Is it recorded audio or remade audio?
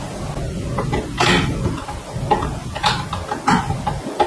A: recorded